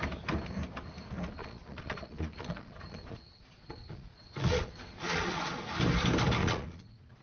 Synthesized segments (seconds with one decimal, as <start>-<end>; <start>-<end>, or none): 1.4-5.7; 6.4-7.2